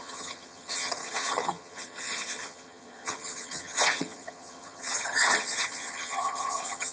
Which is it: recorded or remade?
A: remade